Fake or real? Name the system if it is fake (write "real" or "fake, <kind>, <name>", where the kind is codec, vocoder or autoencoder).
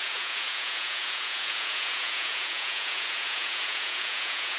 fake, vocoder, Vocos